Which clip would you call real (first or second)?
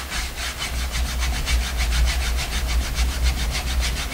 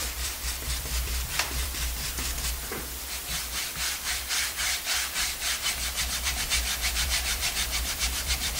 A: first